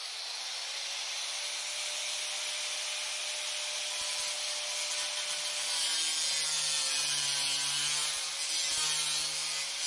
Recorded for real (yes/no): yes